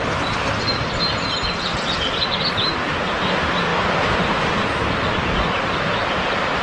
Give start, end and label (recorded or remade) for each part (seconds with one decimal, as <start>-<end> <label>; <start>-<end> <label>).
0.0-6.6 recorded